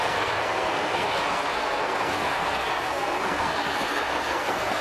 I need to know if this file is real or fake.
fake